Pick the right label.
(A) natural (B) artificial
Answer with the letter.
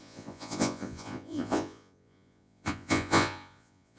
B